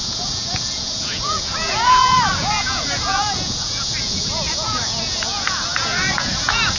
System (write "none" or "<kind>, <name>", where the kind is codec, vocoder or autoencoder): vocoder, Vocos